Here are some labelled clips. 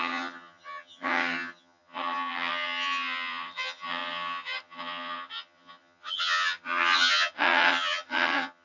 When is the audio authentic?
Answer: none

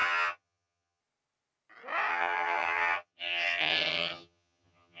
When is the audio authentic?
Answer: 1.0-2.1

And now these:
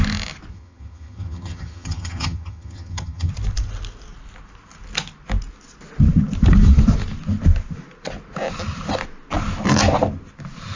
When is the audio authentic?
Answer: 0.0-0.5; 3.3-10.8

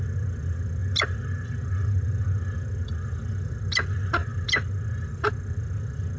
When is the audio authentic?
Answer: 0.0-6.2

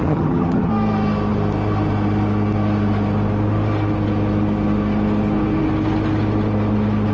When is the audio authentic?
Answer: 0.7-7.1

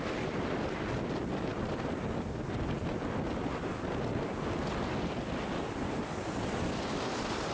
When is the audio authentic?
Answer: 0.0-7.5